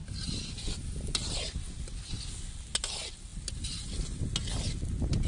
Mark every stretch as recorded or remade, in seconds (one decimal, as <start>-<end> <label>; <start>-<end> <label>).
0.0-5.3 recorded